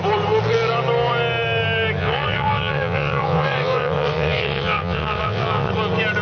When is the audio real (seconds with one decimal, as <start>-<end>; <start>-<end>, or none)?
0.0-2.0; 5.7-6.2